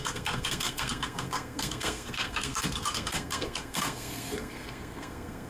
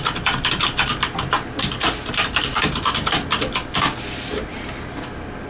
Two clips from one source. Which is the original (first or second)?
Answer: second